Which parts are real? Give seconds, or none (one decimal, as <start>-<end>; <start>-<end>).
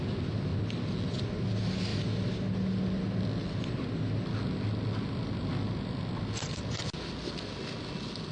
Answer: 0.0-8.3